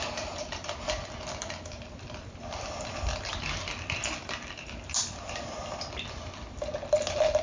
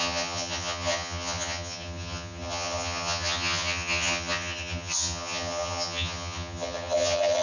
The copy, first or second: second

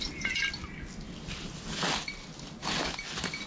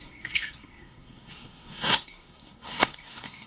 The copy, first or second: second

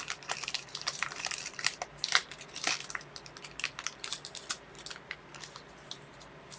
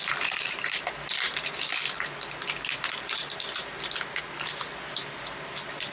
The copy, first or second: first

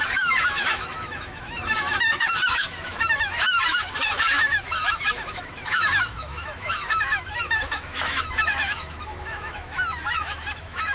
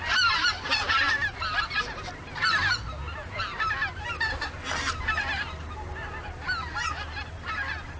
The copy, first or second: first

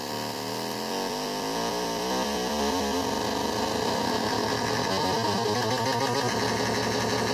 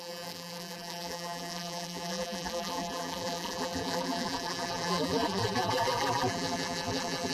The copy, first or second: second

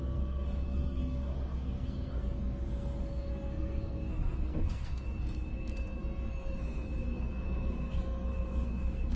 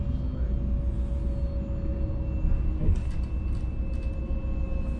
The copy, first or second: first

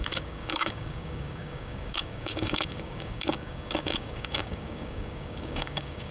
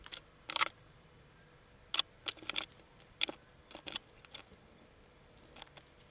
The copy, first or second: first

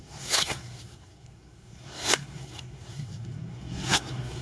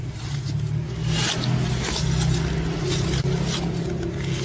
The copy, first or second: first